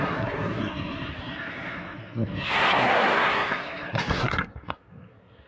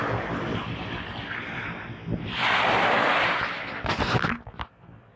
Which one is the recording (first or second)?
second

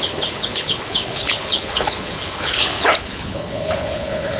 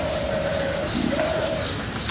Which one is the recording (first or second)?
second